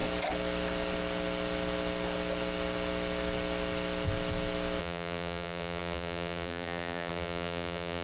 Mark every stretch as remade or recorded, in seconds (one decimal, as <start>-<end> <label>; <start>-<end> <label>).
0.0-4.8 recorded; 4.8-8.0 remade